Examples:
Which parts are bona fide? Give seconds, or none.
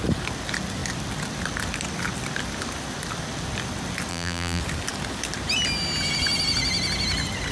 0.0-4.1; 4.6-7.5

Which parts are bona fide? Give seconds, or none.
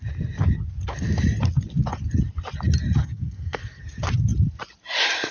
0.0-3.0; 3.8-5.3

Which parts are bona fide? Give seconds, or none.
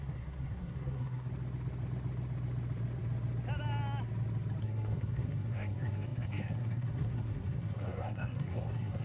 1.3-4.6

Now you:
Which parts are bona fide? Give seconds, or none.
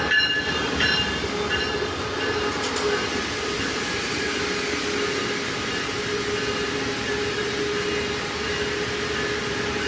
0.0-9.9